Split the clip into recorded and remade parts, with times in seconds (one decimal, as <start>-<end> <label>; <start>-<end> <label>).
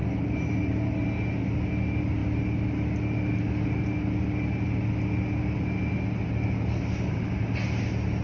0.0-0.6 remade; 0.6-2.2 recorded; 2.2-3.5 remade; 3.5-8.2 recorded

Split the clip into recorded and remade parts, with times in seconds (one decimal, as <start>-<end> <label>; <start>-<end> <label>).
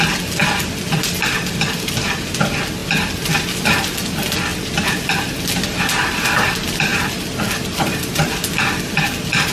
0.0-0.4 recorded; 0.4-1.7 remade; 1.7-2.8 recorded; 2.8-3.6 remade; 3.6-9.5 recorded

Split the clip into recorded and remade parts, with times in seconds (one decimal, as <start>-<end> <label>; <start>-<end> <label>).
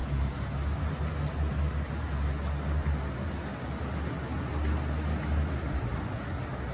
0.0-6.7 recorded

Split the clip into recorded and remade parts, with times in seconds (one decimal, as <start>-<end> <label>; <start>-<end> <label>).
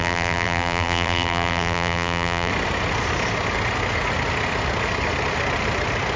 0.0-2.5 remade; 2.5-6.2 recorded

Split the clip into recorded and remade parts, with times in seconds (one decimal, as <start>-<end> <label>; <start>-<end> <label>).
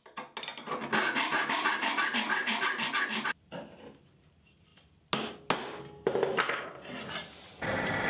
0.0-8.1 recorded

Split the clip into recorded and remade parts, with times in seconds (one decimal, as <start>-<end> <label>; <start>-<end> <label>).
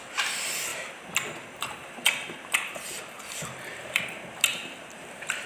0.0-0.7 recorded; 0.7-4.0 remade; 4.0-4.5 recorded; 4.5-5.5 remade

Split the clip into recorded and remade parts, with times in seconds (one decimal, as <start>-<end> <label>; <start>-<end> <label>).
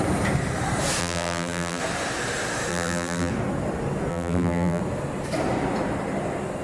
0.0-1.0 recorded; 1.0-1.8 remade; 1.8-2.7 recorded; 2.7-3.3 remade; 3.3-4.1 recorded; 4.1-4.8 remade; 4.8-6.6 recorded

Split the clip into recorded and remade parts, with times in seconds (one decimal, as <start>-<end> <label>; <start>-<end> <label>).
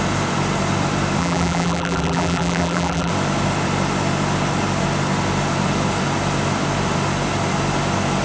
0.0-1.2 recorded; 1.2-3.1 remade; 3.1-8.2 recorded